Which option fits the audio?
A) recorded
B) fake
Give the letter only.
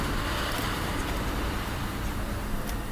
B